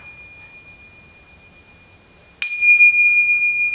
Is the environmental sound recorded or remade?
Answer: recorded